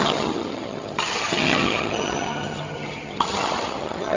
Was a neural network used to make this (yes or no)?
yes